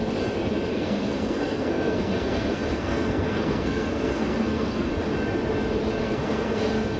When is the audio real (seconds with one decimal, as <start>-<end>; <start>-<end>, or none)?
0.0-0.7; 4.9-6.0